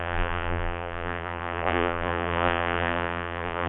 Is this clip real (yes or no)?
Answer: no